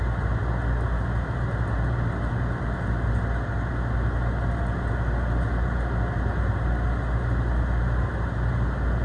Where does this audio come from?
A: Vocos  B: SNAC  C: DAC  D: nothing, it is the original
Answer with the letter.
D